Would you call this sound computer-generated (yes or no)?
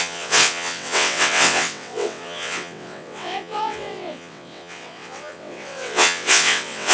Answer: yes